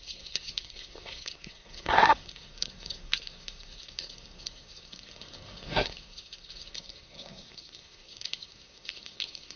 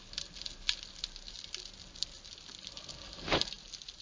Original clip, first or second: second